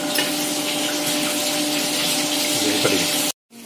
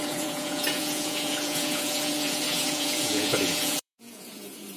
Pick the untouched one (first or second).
first